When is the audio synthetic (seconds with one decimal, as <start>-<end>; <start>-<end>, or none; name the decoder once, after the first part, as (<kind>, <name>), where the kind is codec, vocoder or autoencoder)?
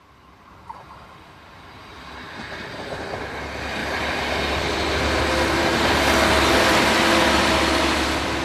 none